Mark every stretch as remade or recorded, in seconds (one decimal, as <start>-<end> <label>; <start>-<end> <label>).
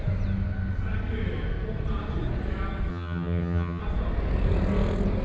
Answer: 0.0-2.9 recorded; 2.9-3.8 remade; 3.8-5.2 recorded